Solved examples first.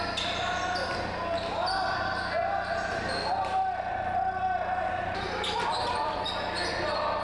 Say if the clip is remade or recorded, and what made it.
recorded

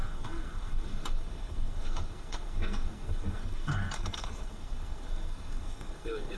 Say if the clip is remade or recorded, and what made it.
remade, codec, SNAC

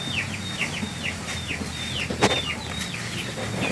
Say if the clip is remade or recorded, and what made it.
recorded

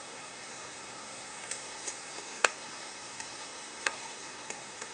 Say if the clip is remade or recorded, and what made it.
remade, codec, SNAC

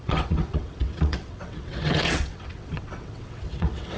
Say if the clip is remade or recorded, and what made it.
remade, vocoder, WaveNeXt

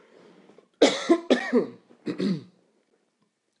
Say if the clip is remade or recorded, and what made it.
recorded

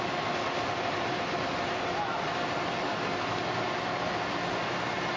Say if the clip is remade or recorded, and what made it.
recorded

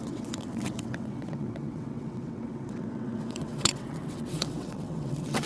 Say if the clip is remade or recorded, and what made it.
remade, vocoder, WaveNeXt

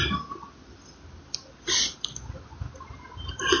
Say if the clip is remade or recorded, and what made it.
recorded